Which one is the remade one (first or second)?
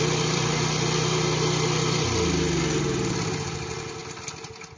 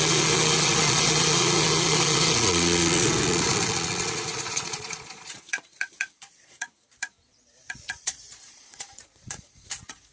second